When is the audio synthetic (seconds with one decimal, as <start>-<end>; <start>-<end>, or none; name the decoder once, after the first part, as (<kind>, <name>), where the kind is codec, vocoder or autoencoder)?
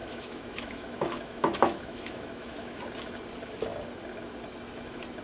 0.0-2.8 (autoencoder, DAC-VAE)